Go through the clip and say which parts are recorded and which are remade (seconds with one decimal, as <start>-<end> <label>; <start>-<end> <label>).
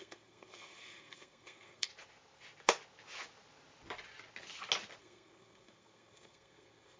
0.0-1.9 remade; 1.9-5.0 recorded; 5.0-7.0 remade